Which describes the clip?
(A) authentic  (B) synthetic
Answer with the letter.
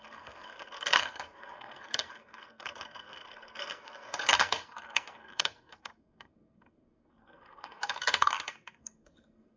B